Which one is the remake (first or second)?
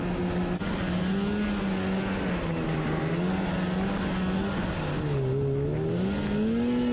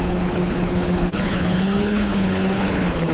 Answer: second